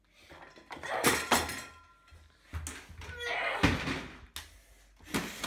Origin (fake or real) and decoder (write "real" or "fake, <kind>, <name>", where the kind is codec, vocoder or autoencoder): real